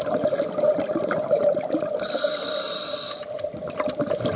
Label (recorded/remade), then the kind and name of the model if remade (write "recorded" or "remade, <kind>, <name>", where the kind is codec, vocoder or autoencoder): recorded